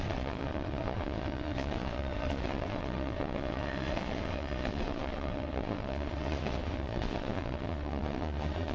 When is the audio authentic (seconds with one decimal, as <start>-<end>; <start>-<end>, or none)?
none